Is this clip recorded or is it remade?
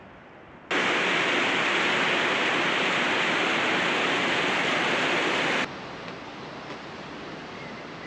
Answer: recorded